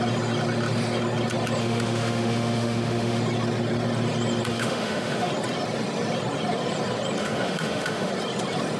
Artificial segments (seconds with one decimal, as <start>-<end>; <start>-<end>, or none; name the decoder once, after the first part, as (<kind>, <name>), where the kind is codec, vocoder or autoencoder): 1.6-3.2 (autoencoder, DAC-VAE); 4.5-5.3; 7.2-8.1